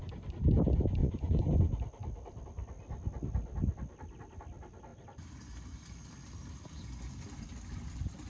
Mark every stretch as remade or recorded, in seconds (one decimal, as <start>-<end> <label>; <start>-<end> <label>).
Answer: 0.0-1.0 recorded; 1.0-1.5 remade; 1.5-8.3 recorded